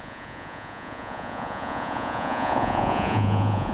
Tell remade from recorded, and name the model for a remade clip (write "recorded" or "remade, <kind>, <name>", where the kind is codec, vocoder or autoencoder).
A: remade, vocoder, Vocos